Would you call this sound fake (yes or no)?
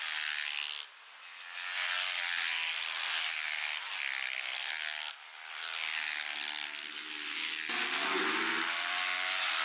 no